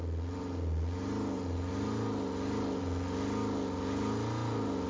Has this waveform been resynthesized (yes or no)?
no